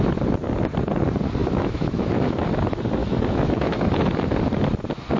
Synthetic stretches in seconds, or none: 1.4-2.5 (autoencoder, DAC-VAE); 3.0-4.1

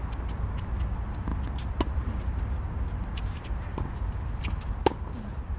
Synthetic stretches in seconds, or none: none

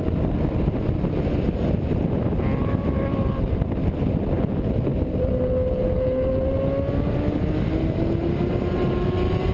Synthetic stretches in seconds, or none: none

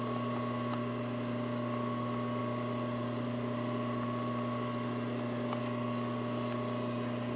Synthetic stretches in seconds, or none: 2.4-5.6 (vocoder, BigVGAN v2)

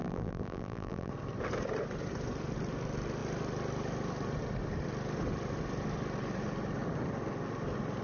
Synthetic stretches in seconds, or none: 0.0-1.1 (vocoder, BigVGAN v2)

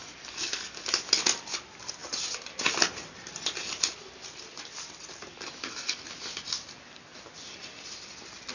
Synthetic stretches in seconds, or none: 0.0-0.9 (codec, DAC); 5.3-6.0

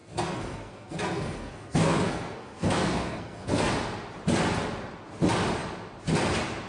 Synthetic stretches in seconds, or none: 0.0-3.7 (codec, SNAC)

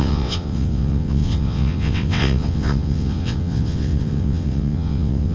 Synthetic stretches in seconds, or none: 0.0-5.3 (vocoder, WaveNeXt)